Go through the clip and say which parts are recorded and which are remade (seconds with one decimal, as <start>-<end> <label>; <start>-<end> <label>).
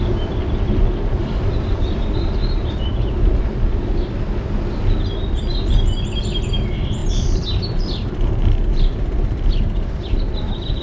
0.0-1.2 recorded; 1.2-2.9 remade; 2.9-7.0 recorded; 7.0-8.7 remade; 8.7-10.8 recorded